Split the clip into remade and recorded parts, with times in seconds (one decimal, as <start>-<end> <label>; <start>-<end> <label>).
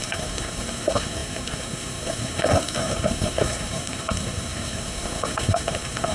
0.0-6.1 remade